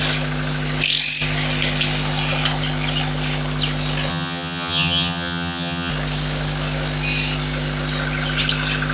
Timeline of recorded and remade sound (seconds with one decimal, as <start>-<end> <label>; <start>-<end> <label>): 0.0-4.1 recorded; 4.1-5.9 remade; 5.9-8.9 recorded